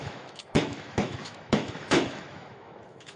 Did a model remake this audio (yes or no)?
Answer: yes